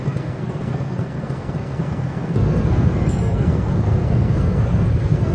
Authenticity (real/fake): fake